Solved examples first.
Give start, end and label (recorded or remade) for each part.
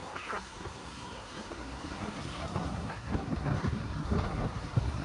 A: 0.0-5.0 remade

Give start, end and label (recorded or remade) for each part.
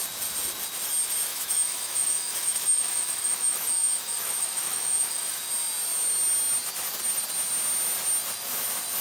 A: 0.0-1.3 recorded; 1.3-5.4 remade; 5.4-9.0 recorded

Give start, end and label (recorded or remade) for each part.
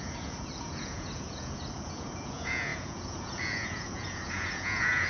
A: 0.0-5.1 remade